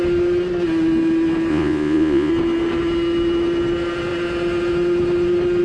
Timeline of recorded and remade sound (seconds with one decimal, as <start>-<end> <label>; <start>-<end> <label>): 0.0-1.5 recorded; 1.5-2.3 remade; 2.3-5.6 recorded